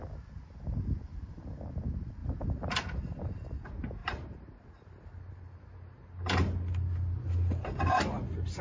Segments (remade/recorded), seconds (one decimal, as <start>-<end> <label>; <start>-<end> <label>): 0.0-4.0 recorded; 4.0-5.0 remade; 5.0-8.6 recorded